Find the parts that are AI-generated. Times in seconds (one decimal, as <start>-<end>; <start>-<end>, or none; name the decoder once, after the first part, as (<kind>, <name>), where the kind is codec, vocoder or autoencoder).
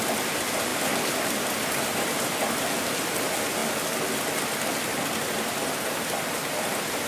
0.7-2.4 (vocoder, BigVGAN v2)